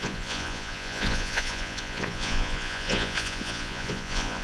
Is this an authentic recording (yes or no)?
no